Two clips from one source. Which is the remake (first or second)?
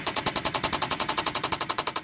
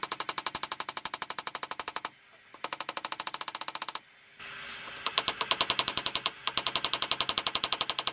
first